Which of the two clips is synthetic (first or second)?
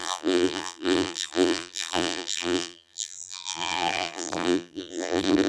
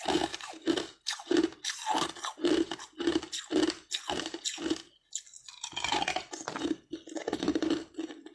first